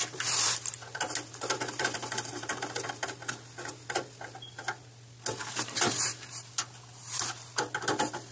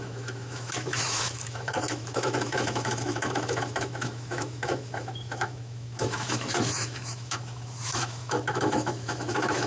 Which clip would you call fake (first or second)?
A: second